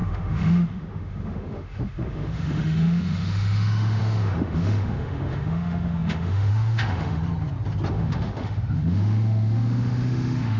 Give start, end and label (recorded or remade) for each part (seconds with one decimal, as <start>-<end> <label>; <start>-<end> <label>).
0.0-7.2 remade; 7.2-7.9 recorded; 7.9-10.6 remade